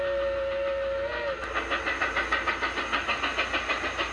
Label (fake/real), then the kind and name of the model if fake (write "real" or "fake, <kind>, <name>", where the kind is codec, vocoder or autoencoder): real